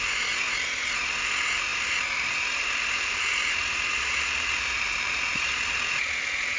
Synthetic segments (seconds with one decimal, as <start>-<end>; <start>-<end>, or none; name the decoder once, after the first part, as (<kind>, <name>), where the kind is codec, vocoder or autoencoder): 1.7-5.7 (vocoder, BigVGAN v2)